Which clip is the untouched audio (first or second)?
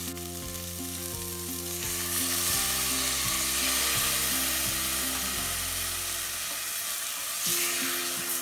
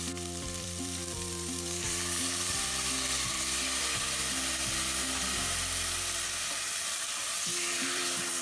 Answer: first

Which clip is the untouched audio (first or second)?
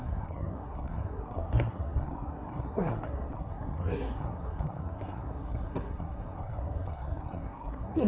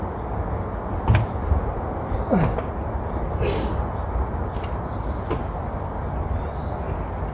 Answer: second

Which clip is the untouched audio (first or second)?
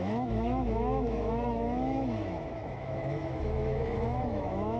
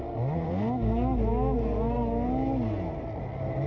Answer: second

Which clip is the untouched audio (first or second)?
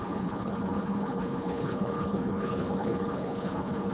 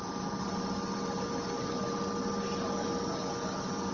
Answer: second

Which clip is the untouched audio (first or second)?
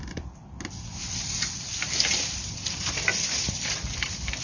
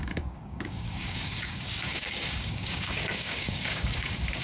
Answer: first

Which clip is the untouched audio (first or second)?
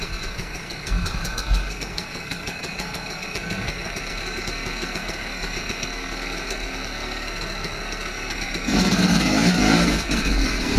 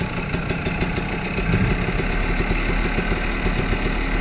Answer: second